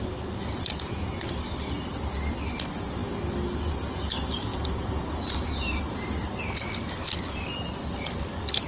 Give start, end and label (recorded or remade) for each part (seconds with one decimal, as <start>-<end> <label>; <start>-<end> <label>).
0.0-4.5 recorded; 4.5-5.8 remade; 5.8-8.7 recorded